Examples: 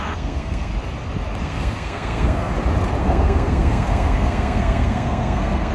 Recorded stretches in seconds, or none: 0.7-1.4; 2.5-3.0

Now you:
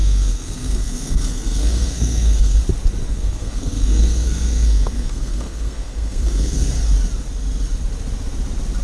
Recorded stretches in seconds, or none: 2.6-3.1; 6.7-8.8

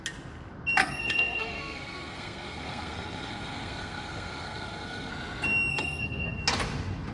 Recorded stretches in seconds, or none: 0.0-0.8; 5.1-5.7; 6.4-7.1